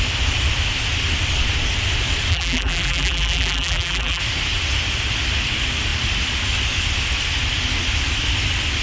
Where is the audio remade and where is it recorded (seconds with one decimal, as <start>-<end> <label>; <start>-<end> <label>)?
0.0-2.3 recorded; 2.3-4.2 remade; 4.2-8.8 recorded